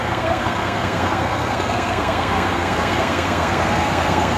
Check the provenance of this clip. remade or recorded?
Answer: remade